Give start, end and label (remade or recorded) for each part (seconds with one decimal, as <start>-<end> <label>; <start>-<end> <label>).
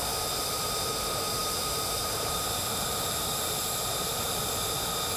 0.0-1.4 recorded; 1.4-4.5 remade; 4.5-5.2 recorded